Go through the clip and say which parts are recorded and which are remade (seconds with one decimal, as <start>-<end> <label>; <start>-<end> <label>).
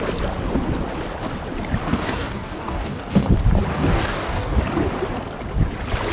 0.0-1.9 recorded; 1.9-3.3 remade; 3.3-3.7 recorded; 3.7-4.6 remade; 4.6-6.1 recorded